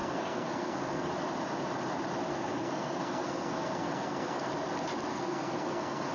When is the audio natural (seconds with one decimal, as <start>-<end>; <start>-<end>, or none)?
1.1-2.3; 4.5-5.1

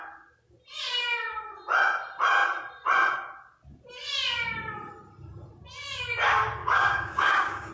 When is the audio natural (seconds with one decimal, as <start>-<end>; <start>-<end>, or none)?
0.0-6.6